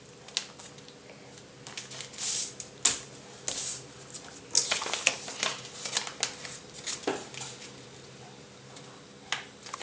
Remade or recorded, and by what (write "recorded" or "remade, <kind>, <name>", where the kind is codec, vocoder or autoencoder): recorded